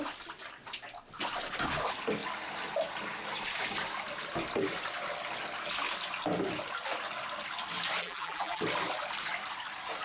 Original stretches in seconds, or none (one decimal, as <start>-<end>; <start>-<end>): 0.0-8.0; 8.6-10.0